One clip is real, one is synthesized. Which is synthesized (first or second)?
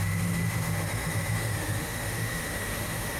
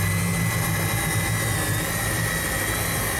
first